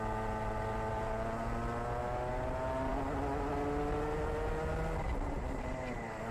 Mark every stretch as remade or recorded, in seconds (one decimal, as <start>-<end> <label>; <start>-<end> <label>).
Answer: 0.0-6.3 recorded